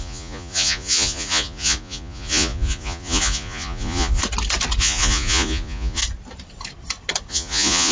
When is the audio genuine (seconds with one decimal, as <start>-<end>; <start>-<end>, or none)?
4.2-4.8; 6.0-7.3